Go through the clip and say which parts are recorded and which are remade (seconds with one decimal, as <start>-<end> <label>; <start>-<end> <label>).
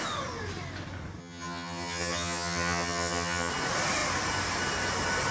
0.0-1.2 recorded; 1.2-3.5 remade; 3.5-5.3 recorded